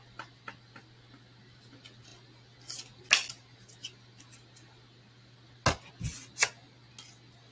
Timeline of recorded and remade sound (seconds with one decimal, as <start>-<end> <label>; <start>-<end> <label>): 0.0-7.5 recorded

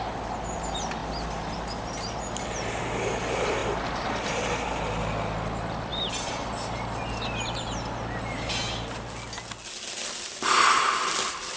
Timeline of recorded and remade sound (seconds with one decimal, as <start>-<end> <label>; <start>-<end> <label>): 0.0-11.6 recorded

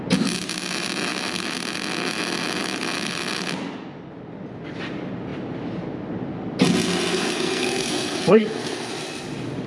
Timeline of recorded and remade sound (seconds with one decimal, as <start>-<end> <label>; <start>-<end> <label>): 0.0-7.1 recorded; 7.1-8.9 remade; 8.9-9.7 recorded

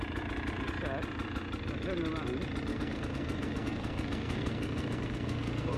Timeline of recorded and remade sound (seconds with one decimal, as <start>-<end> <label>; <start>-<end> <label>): 0.0-2.7 recorded; 2.7-5.8 remade

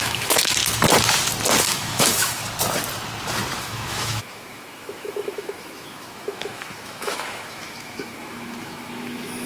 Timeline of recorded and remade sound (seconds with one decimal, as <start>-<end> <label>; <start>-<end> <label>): 0.0-0.6 remade; 0.6-1.6 recorded; 1.6-2.4 remade; 2.4-3.6 recorded; 3.6-9.5 remade